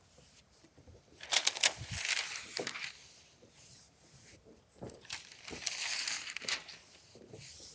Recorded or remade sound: recorded